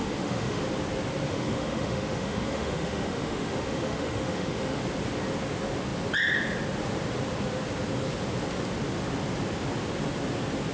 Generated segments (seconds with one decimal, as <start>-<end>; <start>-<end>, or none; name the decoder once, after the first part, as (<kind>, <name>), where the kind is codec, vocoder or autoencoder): 0.0-0.6 (autoencoder, DAC-VAE); 1.3-4.8